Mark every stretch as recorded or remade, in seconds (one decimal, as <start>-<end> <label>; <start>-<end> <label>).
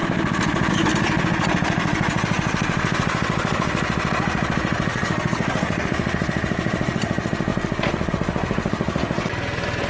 0.0-4.9 recorded; 4.9-5.9 remade; 5.9-9.9 recorded